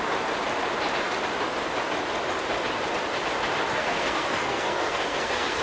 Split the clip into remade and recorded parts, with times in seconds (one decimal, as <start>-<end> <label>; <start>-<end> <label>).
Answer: 0.0-3.7 recorded; 3.7-5.6 remade